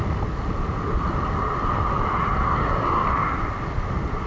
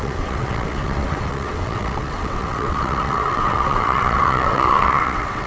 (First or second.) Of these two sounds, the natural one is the first